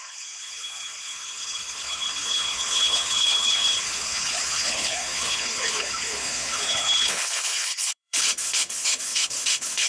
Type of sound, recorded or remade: remade